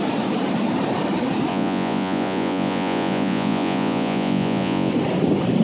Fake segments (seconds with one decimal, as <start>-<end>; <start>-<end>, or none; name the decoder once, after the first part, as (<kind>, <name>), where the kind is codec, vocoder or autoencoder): 1.5-4.9 (vocoder, Vocos)